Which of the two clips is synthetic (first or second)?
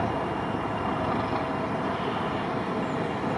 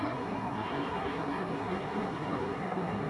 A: second